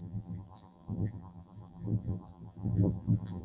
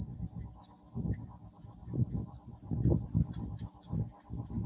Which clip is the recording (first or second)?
second